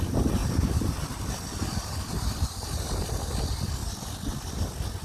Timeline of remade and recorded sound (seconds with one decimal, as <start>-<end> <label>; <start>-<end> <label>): 0.0-0.4 recorded; 0.4-3.4 remade; 3.4-5.0 recorded